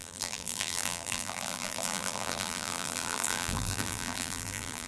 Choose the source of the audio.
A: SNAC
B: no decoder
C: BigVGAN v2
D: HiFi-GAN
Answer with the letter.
C